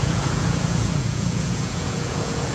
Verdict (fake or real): fake